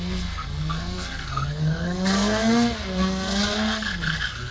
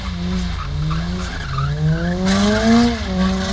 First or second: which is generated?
first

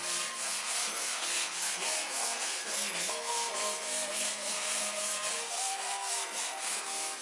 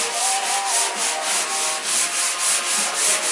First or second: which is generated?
first